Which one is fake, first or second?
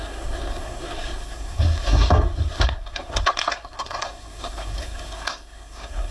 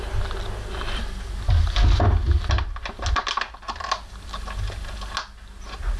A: first